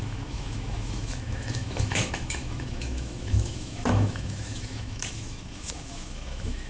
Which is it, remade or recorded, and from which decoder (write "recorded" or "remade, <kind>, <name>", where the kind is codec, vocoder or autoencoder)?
remade, autoencoder, DAC-VAE